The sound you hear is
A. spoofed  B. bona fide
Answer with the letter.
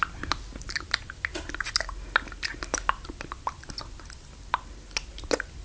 B